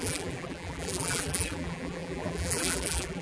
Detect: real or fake fake